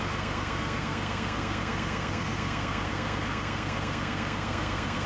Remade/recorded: remade